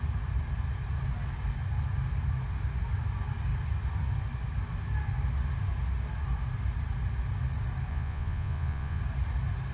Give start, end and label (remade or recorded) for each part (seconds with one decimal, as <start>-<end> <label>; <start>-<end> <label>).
0.0-7.9 recorded; 7.9-9.0 remade; 9.0-9.7 recorded